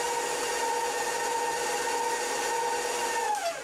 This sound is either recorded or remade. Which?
recorded